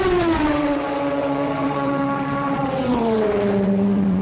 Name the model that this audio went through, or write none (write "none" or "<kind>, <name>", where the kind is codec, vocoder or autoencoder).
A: vocoder, WaveNeXt